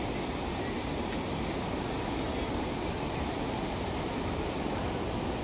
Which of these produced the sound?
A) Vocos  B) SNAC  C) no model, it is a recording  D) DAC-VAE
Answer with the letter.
C